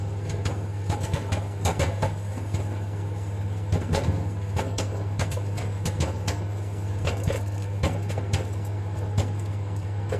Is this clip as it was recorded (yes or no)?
no